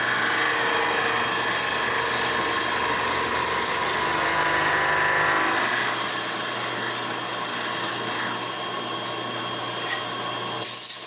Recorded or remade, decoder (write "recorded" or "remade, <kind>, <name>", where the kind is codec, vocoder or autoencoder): recorded